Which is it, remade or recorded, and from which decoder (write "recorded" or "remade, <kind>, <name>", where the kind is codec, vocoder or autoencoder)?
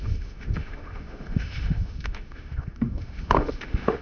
remade, autoencoder, DAC-VAE